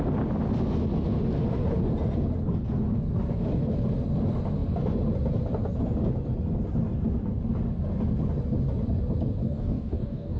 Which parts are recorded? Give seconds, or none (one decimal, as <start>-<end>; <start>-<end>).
0.0-9.4